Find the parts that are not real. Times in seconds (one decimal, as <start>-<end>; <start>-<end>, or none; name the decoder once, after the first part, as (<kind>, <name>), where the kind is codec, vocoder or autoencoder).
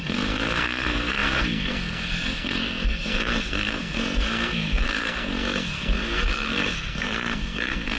0.0-8.0 (codec, SNAC)